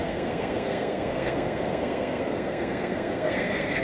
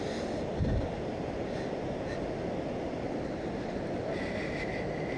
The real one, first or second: second